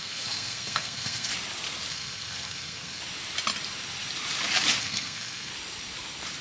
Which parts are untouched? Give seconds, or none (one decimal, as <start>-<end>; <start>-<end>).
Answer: 1.3-1.9; 3.0-4.8; 5.5-6.4